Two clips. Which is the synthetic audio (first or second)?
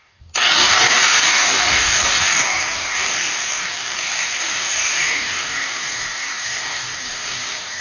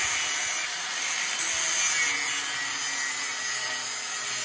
first